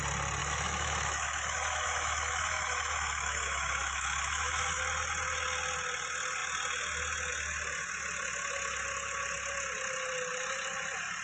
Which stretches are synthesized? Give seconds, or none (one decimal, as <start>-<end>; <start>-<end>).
0.4-4.8